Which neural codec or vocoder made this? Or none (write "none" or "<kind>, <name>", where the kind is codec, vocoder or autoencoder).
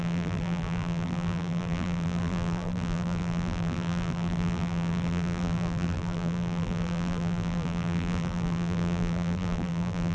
vocoder, BigVGAN v2